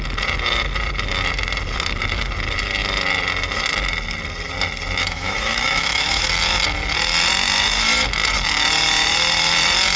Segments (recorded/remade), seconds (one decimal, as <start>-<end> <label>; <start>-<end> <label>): 0.0-5.0 recorded; 5.0-6.3 remade; 6.3-10.0 recorded